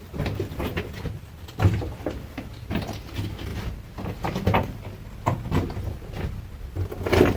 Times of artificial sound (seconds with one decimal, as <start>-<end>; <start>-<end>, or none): none